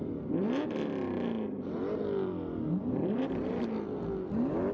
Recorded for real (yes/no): yes